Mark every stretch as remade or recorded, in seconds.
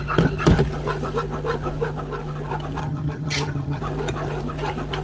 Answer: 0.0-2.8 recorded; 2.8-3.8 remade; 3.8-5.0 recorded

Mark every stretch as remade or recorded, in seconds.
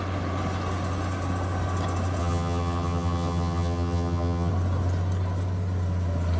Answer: 0.0-2.2 recorded; 2.2-4.5 remade; 4.5-6.4 recorded